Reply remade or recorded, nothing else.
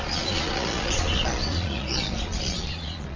remade